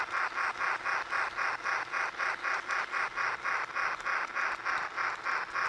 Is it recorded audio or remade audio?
recorded